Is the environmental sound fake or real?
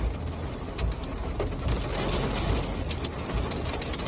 real